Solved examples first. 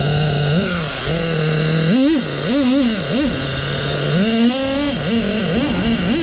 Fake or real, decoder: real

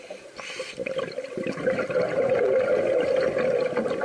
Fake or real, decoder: real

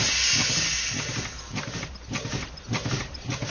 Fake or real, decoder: real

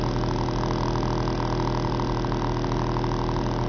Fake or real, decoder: real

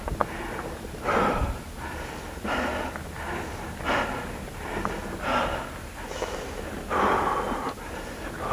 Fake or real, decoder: real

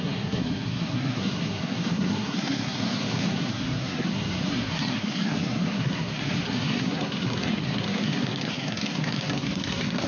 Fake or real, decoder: fake, codec, SNAC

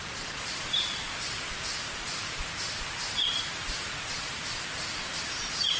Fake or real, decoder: fake, vocoder, BigVGAN v2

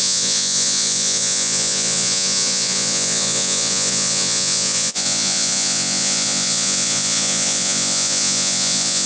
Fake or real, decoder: fake, vocoder, Vocos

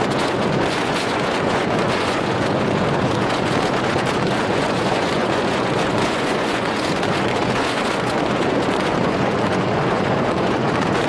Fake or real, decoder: fake, vocoder, Vocos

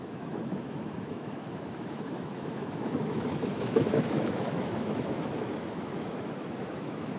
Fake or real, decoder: fake, autoencoder, DAC-VAE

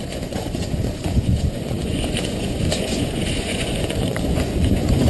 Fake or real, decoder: fake, vocoder, Vocos